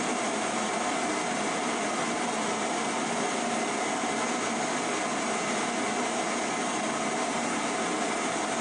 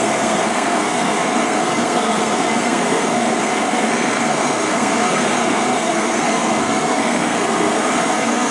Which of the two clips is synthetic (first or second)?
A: second